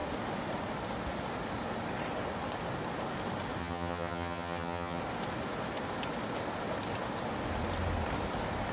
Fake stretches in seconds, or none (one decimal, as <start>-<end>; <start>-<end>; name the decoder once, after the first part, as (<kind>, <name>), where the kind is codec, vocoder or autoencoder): 3.6-5.0 (vocoder, HiFi-GAN)